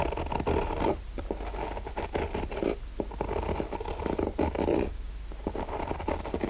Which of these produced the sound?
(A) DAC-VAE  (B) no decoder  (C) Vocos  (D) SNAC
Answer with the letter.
B